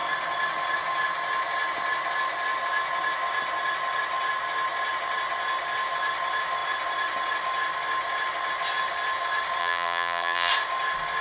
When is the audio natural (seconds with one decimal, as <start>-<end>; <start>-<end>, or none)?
0.0-9.6; 10.5-11.2